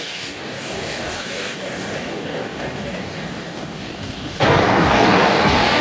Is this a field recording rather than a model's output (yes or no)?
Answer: no